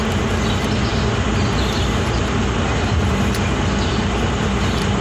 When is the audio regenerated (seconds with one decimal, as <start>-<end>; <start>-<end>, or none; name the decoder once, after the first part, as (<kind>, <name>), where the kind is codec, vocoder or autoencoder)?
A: none